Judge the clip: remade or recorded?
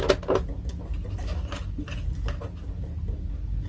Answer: recorded